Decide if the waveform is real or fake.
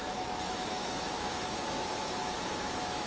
fake